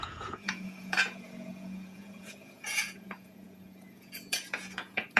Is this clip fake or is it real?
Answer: fake